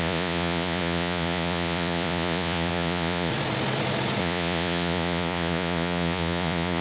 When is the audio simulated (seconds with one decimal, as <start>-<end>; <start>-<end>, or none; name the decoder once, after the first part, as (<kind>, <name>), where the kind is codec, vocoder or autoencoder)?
0.0-3.3 (vocoder, Vocos); 4.2-6.8